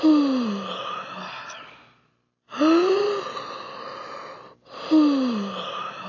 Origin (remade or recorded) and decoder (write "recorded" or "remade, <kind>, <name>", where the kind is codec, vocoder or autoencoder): recorded